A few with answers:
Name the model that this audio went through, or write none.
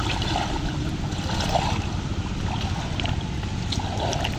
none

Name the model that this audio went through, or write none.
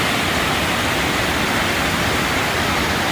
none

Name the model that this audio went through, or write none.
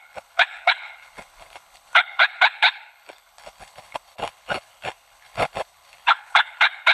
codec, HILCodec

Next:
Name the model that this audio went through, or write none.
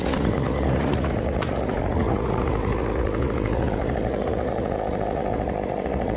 vocoder, Vocos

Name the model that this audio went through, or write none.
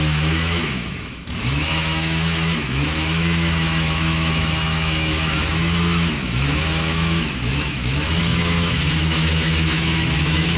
autoencoder, DAC-VAE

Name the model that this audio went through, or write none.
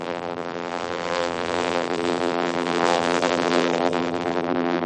vocoder, BigVGAN v2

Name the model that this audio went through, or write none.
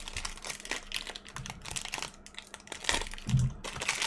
none